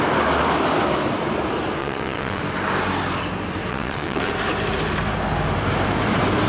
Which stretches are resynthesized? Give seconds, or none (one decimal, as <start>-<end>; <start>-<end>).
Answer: 1.8-2.4; 3.7-4.3